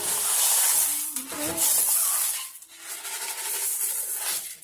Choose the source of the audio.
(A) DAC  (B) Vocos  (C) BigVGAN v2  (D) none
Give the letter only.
D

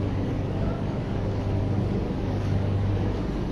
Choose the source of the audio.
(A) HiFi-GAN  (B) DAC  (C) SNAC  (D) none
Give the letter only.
B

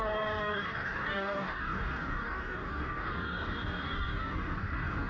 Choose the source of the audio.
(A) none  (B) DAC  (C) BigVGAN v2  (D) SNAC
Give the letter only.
B